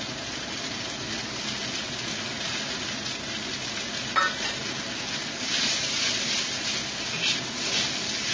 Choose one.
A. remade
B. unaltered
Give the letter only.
B